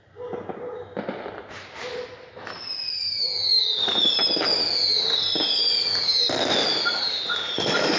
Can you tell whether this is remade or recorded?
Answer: recorded